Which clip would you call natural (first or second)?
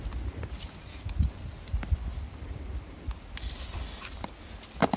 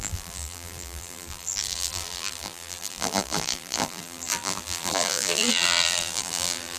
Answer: first